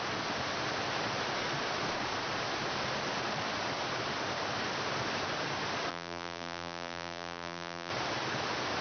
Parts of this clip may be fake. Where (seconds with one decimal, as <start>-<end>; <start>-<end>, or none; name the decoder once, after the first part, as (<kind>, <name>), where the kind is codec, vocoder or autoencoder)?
5.9-7.9 (vocoder, BigVGAN v2)